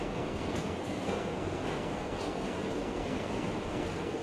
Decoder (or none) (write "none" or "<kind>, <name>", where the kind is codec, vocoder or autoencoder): codec, SNAC